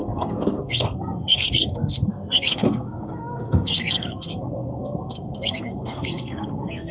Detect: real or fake fake